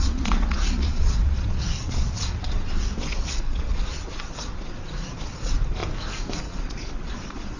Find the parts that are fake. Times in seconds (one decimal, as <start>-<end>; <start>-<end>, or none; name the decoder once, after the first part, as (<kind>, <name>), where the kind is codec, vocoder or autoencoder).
0.0-5.8 (vocoder, Vocos); 6.4-7.6